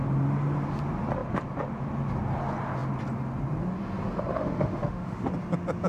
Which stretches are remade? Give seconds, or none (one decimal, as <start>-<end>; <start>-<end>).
4.3-5.3